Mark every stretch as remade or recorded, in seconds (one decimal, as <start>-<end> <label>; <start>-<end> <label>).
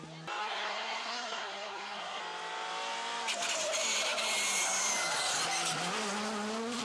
0.0-0.4 recorded; 0.4-2.2 remade; 2.2-6.8 recorded